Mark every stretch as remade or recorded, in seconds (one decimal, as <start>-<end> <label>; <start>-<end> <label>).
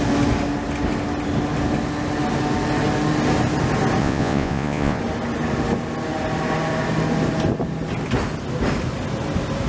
0.0-4.0 recorded; 4.0-5.0 remade; 5.0-9.7 recorded